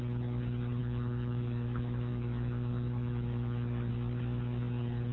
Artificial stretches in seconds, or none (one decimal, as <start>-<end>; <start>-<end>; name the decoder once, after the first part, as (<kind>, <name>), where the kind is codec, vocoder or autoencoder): 0.8-3.9 (autoencoder, DAC-VAE)

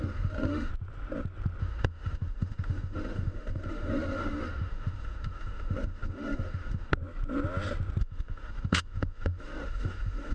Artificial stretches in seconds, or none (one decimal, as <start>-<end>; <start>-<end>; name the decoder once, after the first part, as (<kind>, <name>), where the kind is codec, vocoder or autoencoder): 0.0-0.7 (autoencoder, DAC-VAE); 1.6-6.9; 8.0-10.3

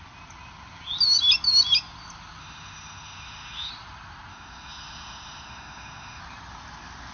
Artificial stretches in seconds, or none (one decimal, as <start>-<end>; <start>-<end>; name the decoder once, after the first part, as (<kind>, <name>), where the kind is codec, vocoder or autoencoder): 2.4-3.7 (autoencoder, DAC-VAE); 4.3-6.2

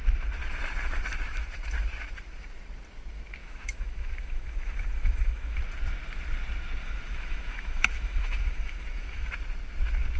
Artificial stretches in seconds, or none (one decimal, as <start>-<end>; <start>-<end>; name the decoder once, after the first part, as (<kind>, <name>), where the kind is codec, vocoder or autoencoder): 3.4-5.6 (autoencoder, DAC-VAE); 6.8-9.3

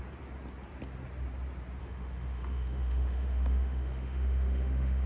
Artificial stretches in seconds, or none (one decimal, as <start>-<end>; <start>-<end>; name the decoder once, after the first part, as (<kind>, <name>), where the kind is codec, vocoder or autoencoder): 1.8-5.1 (autoencoder, DAC-VAE)

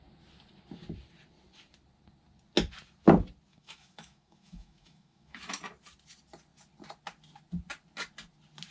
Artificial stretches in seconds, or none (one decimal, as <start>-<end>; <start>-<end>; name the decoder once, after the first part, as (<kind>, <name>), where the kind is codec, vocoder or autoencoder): 3.5-5.6 (autoencoder, DAC-VAE)

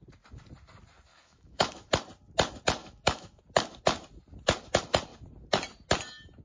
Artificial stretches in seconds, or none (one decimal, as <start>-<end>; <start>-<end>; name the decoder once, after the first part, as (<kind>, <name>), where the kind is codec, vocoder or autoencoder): 1.1-1.9 (autoencoder, DAC-VAE); 2.8-3.4

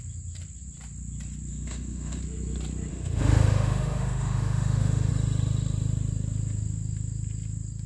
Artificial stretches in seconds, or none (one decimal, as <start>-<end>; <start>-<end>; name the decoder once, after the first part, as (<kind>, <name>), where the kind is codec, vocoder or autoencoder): 1.5-2.2 (autoencoder, DAC-VAE); 2.9-5.1